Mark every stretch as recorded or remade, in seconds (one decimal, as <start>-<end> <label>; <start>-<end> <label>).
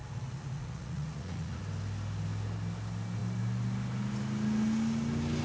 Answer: 0.0-1.6 remade; 1.6-5.4 recorded